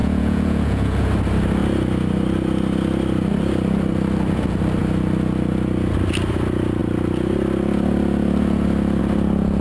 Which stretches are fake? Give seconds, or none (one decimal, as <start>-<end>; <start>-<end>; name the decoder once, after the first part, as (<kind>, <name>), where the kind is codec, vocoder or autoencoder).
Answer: 0.0-1.1 (vocoder, Vocos)